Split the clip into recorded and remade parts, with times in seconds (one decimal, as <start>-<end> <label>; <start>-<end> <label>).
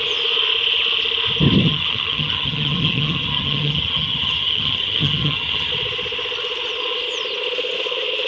0.0-1.6 recorded; 1.6-5.7 remade; 5.7-8.3 recorded